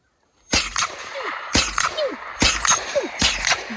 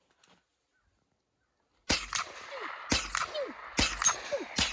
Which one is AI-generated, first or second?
first